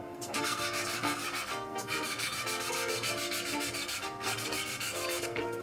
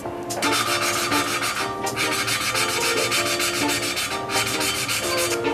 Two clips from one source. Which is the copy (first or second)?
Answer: first